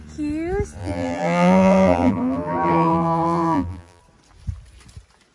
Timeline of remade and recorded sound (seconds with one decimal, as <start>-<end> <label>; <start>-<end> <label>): 0.0-0.8 recorded; 0.8-4.0 remade; 4.0-5.3 recorded